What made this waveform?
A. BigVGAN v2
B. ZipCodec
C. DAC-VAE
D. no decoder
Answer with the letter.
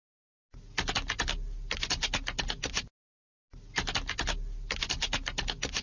D